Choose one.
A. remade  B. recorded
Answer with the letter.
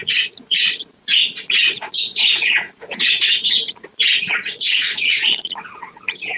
A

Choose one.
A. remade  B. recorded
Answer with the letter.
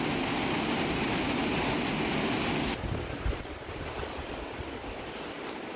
B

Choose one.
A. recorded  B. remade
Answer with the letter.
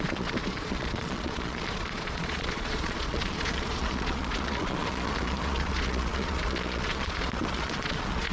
B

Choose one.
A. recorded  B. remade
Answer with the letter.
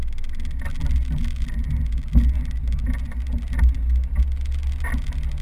A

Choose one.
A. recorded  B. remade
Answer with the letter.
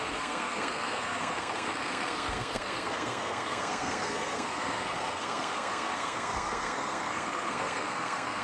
B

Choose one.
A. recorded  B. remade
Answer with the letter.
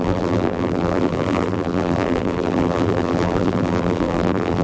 B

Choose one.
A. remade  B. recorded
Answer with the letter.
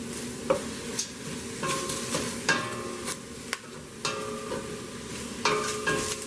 B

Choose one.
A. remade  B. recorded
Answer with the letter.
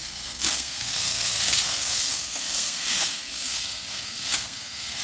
A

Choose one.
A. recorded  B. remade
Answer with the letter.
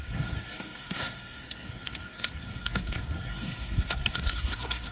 B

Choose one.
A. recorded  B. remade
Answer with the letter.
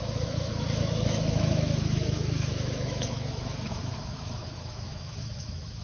B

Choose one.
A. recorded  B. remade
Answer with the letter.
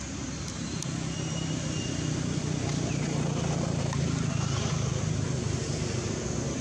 A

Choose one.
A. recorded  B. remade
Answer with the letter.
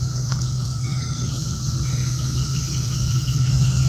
B